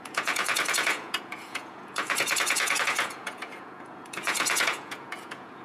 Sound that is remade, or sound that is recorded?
remade